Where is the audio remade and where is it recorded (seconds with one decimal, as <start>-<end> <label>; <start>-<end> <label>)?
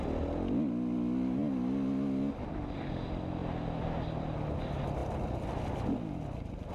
0.0-6.7 recorded